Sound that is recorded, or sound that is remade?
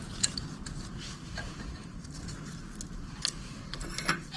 recorded